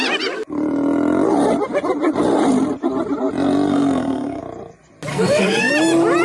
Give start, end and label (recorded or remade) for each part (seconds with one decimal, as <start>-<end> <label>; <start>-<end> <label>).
0.0-3.7 recorded; 3.7-4.4 remade; 4.4-5.1 recorded; 5.1-5.7 remade; 5.7-6.2 recorded